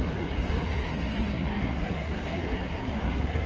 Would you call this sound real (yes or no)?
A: no